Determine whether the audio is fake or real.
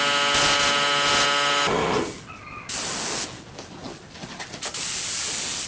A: real